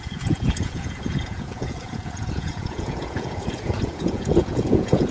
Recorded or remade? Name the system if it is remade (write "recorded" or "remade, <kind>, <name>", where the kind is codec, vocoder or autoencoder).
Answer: remade, vocoder, Vocos